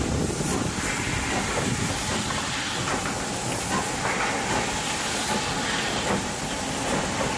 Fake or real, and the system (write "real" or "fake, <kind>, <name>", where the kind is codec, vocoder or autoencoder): real